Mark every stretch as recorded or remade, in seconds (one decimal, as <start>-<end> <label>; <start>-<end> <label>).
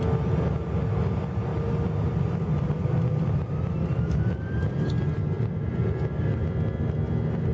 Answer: 0.0-7.5 recorded